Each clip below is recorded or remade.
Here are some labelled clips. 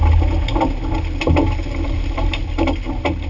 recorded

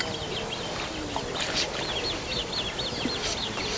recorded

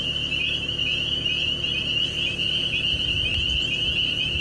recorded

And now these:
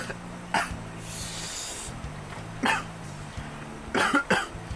recorded